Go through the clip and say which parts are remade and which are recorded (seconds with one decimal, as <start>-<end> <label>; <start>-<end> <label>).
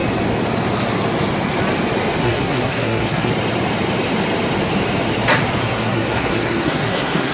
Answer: 0.0-2.2 recorded; 2.2-3.3 remade; 3.3-5.6 recorded; 5.6-7.3 remade